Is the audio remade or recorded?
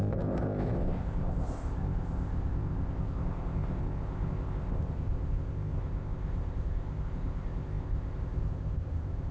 remade